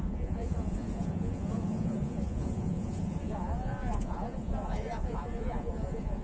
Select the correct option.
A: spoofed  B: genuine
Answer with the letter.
A